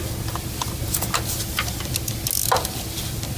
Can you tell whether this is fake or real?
real